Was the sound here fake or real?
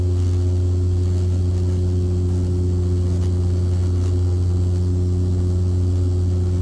real